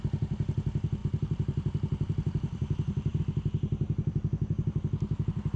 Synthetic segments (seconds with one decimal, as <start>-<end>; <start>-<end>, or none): 1.0-3.2